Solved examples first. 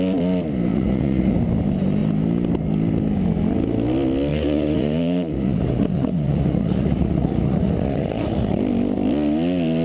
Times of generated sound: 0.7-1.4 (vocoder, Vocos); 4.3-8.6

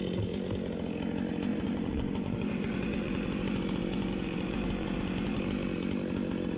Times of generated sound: 1.5-5.4 (vocoder, Vocos)